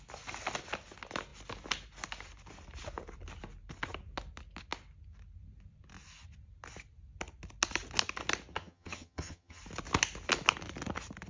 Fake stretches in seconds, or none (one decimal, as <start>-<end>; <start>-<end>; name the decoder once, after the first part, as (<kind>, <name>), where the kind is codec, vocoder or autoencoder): 8.5-9.6 (vocoder, HiFi-GAN)